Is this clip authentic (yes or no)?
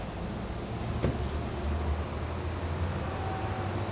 yes